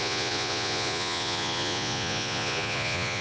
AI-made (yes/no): yes